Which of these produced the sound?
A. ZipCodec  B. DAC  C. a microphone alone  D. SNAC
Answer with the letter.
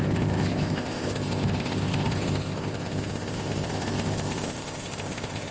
A